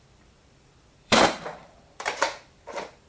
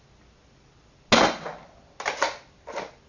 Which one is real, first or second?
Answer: second